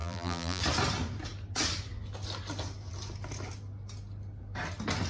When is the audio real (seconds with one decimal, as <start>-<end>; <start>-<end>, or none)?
0.6-5.1